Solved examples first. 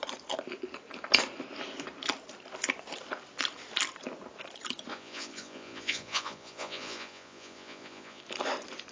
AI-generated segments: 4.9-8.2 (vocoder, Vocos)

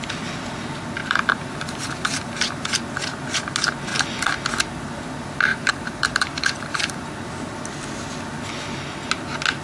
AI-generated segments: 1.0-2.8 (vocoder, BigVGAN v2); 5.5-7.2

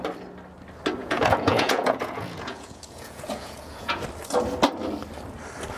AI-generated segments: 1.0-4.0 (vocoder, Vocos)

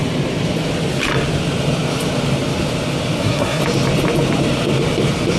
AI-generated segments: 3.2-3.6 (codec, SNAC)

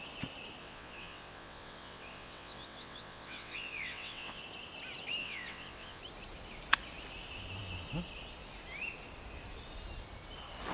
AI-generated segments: 0.6-4.4 (vocoder, WaveNeXt); 5.2-6.0